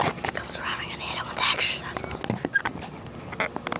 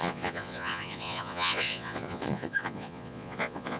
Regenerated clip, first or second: second